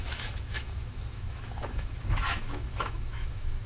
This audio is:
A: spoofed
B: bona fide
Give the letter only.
A